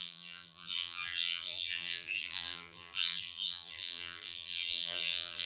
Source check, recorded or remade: remade